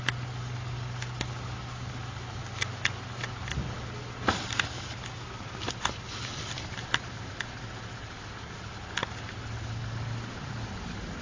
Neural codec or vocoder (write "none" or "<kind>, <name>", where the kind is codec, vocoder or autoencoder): none